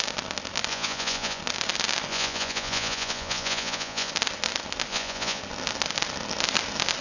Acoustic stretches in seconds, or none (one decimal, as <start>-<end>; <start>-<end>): 0.0-0.7; 1.4-2.1; 4.1-4.9; 5.4-7.0